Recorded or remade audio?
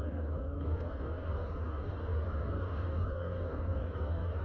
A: remade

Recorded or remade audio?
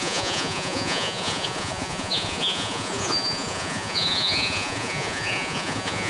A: remade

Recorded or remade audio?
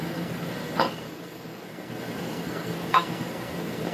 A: remade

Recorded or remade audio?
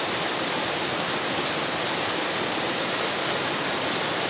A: remade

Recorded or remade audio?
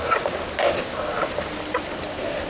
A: recorded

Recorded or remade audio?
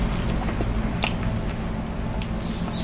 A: recorded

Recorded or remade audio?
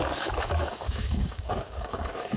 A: remade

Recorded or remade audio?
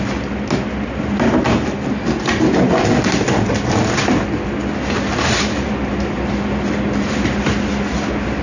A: recorded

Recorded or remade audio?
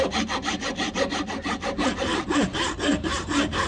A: recorded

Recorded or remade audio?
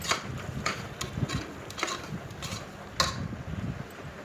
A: recorded